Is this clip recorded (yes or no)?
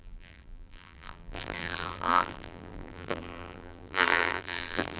no